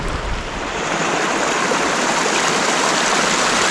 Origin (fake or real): real